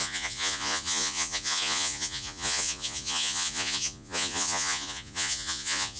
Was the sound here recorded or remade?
remade